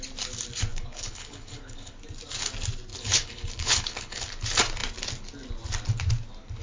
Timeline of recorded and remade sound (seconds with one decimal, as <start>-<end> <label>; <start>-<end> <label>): 0.0-0.7 recorded; 0.7-2.0 remade; 2.0-2.9 recorded; 2.9-4.2 remade; 4.2-6.6 recorded